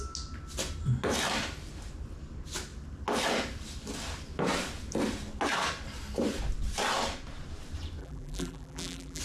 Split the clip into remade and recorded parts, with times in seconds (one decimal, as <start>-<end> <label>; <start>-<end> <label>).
0.0-8.0 recorded; 8.0-9.2 remade